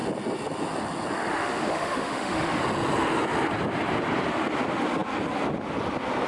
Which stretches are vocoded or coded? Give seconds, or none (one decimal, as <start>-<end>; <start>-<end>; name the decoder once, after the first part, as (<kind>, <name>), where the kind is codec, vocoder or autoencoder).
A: 1.3-2.6 (autoencoder, DAC-VAE)